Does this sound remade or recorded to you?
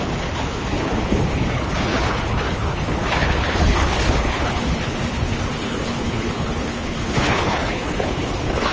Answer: remade